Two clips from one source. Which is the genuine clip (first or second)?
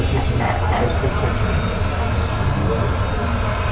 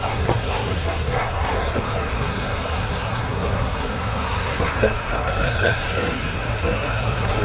first